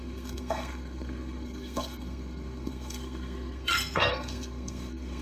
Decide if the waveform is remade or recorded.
remade